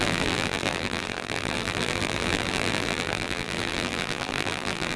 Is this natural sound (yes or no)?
no